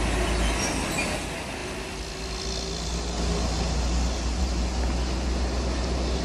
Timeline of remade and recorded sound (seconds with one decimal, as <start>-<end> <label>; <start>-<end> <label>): 0.0-6.2 recorded